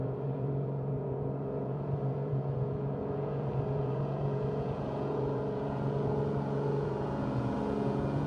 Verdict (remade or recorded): remade